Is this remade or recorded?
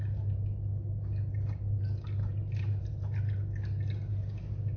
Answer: recorded